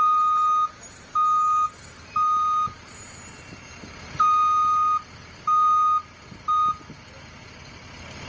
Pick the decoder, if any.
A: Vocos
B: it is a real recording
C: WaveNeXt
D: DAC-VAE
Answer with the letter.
B